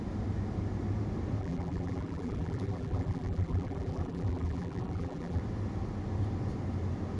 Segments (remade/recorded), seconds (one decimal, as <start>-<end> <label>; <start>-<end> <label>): 0.0-1.4 recorded; 1.4-5.4 remade; 5.4-7.2 recorded